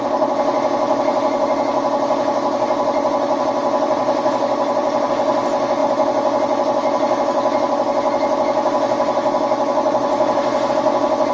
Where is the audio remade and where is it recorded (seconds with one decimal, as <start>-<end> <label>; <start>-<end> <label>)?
0.0-4.0 recorded; 4.0-5.1 remade; 5.1-11.3 recorded